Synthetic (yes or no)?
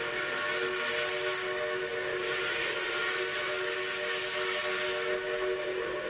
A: no